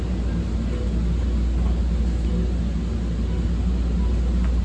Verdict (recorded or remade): recorded